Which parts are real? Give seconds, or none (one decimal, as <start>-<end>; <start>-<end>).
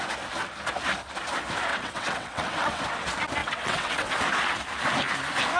0.0-1.7; 2.8-3.4; 4.1-5.6